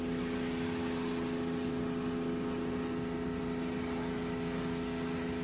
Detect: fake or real real